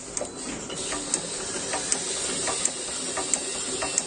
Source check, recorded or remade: recorded